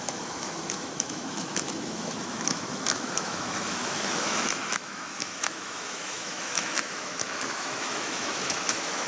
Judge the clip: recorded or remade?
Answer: remade